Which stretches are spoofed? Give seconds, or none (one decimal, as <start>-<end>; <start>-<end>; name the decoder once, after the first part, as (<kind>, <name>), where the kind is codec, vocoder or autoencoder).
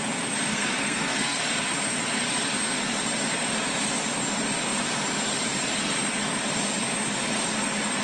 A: 0.5-1.4 (codec, SNAC)